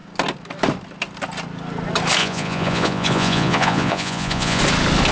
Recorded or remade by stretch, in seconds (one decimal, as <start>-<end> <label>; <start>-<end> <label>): 0.0-2.2 recorded; 2.2-4.6 remade; 4.6-5.1 recorded